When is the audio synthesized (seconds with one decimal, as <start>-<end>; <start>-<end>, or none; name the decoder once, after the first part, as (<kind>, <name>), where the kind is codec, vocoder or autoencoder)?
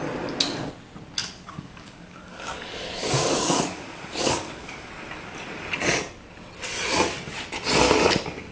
1.2-4.9 (codec, DAC)